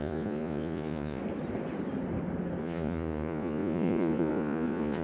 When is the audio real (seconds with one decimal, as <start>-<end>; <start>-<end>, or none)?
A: 1.2-2.6